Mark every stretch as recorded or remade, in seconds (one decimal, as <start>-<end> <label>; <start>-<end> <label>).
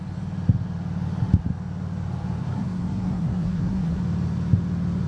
0.0-2.4 recorded; 2.4-4.0 remade; 4.0-5.1 recorded